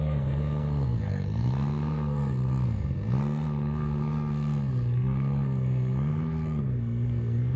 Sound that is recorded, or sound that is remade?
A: remade